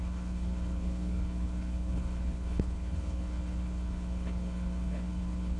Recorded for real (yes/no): no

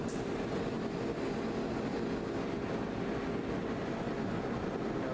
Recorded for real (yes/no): yes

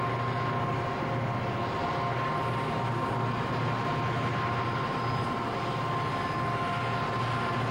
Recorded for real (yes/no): yes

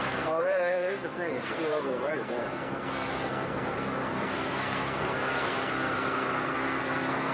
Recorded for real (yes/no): no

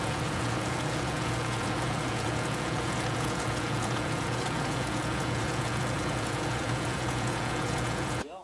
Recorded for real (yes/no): no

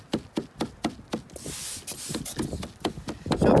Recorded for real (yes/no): yes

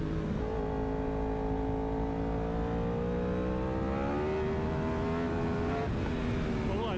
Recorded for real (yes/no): yes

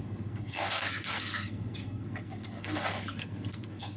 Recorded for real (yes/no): no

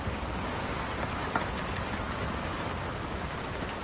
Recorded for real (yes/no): no